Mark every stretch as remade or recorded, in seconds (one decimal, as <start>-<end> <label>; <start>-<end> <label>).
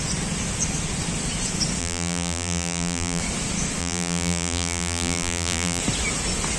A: 0.0-1.8 recorded; 1.8-3.2 remade; 3.2-3.8 recorded; 3.8-5.8 remade; 5.8-6.6 recorded